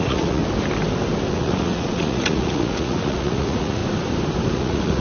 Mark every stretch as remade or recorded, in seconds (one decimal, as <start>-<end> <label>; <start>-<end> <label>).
0.0-0.4 remade; 0.4-1.3 recorded; 1.3-3.8 remade; 3.8-4.5 recorded; 4.5-5.0 remade